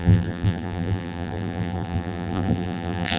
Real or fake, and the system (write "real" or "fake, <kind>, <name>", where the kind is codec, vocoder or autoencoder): fake, vocoder, BigVGAN v2